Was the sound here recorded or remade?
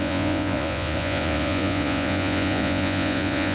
remade